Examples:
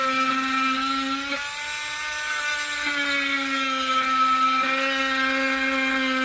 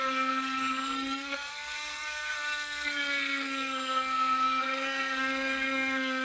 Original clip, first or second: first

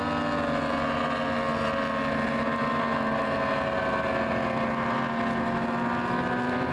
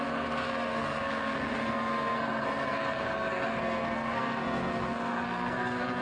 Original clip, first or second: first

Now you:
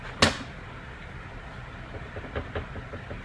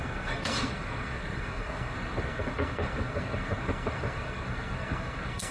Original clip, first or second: first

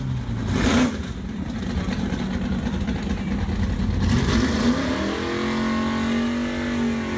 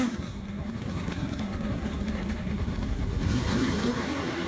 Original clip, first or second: first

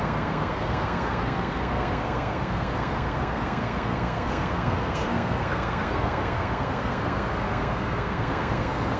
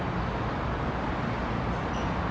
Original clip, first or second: second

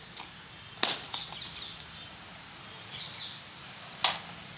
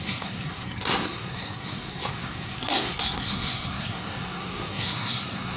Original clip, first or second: first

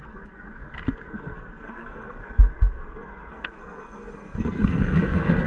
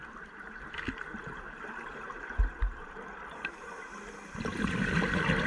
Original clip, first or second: second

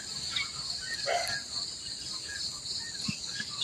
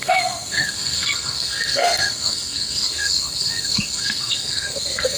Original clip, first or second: first